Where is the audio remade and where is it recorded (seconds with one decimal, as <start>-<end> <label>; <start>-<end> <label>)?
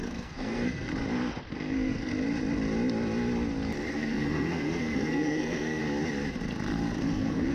0.0-0.9 remade; 0.9-1.5 recorded; 1.5-2.1 remade; 2.1-3.9 recorded; 3.9-5.8 remade; 5.8-7.0 recorded; 7.0-7.5 remade